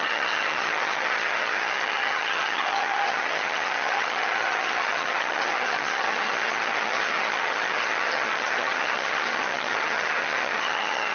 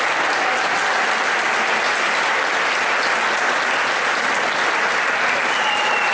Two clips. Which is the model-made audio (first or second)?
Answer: first